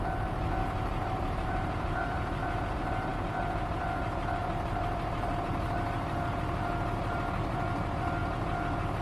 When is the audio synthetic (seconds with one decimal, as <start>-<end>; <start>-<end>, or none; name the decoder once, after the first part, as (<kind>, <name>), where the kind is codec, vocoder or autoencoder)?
0.6-2.7 (vocoder, BigVGAN v2); 4.4-5.9